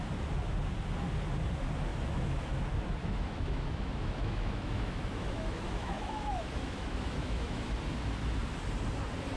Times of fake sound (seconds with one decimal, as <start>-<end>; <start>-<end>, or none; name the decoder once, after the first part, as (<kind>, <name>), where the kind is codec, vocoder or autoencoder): 1.9-2.5 (autoencoder, DAC-VAE); 3.0-7.7